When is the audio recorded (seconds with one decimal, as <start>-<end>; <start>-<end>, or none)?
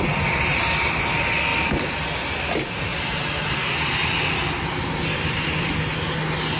0.0-6.6